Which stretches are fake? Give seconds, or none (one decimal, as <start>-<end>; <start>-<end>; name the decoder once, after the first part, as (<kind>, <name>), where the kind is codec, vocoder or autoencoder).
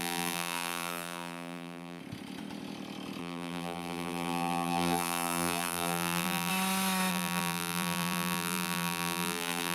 0.0-2.0 (vocoder, BigVGAN v2); 3.2-6.5; 7.1-9.7